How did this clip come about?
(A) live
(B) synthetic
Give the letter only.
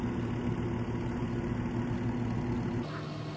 A